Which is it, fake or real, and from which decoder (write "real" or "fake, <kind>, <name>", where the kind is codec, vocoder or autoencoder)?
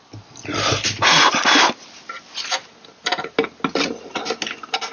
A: real